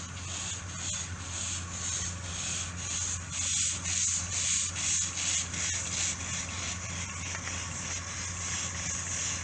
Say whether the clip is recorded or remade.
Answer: recorded